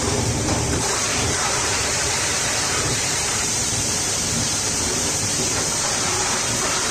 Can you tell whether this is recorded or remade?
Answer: remade